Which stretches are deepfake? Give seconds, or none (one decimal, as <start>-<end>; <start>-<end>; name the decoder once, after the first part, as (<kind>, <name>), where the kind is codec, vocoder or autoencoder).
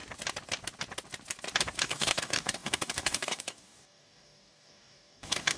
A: 1.8-5.6 (codec, DAC)